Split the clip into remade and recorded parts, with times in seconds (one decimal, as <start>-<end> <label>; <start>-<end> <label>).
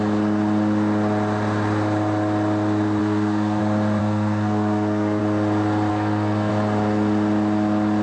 0.0-3.0 recorded; 3.0-3.6 remade; 3.6-4.0 recorded; 4.0-5.2 remade; 5.2-5.9 recorded; 5.9-6.5 remade; 6.5-8.0 recorded